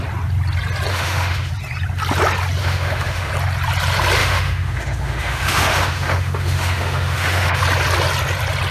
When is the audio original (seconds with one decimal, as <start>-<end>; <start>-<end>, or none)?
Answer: 0.0-0.9; 1.5-2.6; 3.3-4.2; 7.6-8.7